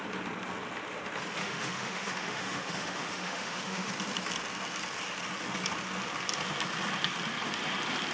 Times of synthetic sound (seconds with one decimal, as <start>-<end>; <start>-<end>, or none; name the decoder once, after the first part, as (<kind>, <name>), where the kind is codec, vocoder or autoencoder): 1.4-3.9 (autoencoder, DAC-VAE)